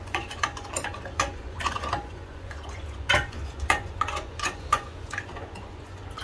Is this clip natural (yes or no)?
no